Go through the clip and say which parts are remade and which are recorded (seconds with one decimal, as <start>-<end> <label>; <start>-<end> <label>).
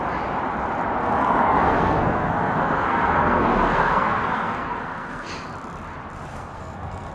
0.0-1.0 recorded; 1.0-5.3 remade; 5.3-6.3 recorded; 6.3-7.1 remade